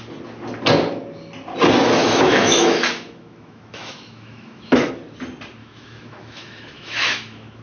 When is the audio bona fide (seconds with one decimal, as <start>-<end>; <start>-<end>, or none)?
0.0-2.0; 4.9-5.6